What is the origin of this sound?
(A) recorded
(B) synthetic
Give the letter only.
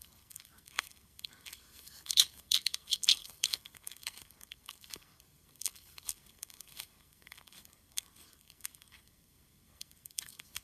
B